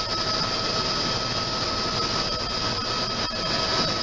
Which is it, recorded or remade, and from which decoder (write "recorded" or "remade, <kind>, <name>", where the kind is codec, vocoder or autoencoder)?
recorded